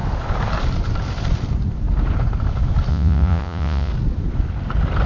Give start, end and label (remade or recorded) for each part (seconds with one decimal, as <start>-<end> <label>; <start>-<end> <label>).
0.0-2.9 recorded; 2.9-3.9 remade; 3.9-5.1 recorded